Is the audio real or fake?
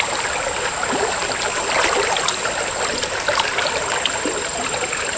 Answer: real